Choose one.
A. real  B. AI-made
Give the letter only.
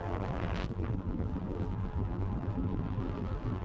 B